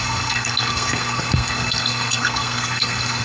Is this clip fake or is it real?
fake